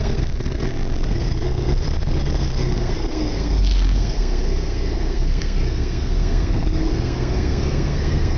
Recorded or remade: remade